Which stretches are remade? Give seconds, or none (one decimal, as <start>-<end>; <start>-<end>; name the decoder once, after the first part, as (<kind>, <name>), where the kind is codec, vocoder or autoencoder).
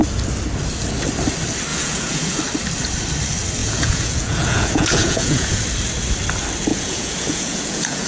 1.7-2.4 (vocoder, Vocos); 3.6-5.6; 6.7-8.1